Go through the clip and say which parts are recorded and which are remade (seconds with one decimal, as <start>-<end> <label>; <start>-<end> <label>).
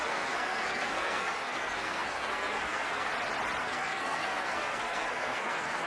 0.0-3.1 remade; 3.1-3.6 recorded; 3.6-5.9 remade